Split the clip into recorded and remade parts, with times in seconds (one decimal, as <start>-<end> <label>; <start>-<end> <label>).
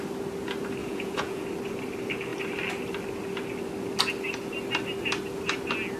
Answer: 0.0-0.8 recorded; 0.8-1.4 remade; 1.4-6.0 recorded